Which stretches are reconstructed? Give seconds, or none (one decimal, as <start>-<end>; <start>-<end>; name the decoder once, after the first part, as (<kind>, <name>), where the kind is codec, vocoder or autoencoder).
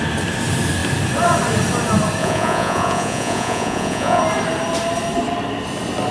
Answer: 2.2-4.2 (vocoder, Vocos)